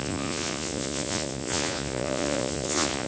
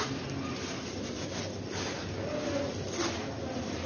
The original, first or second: second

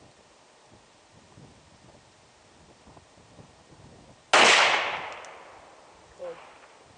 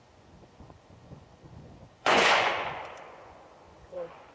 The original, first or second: first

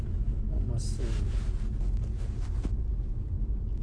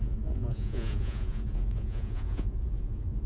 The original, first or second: first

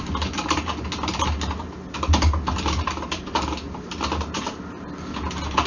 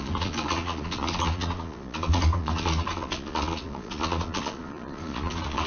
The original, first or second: first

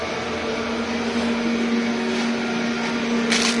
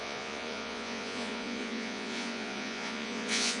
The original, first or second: first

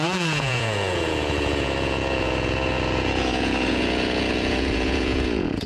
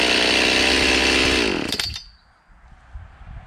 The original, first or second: second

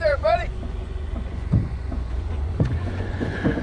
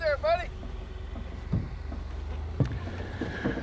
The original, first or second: second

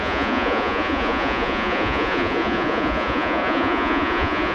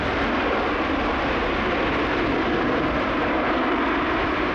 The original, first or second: second